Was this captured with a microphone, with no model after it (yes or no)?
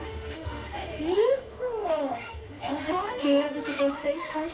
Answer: no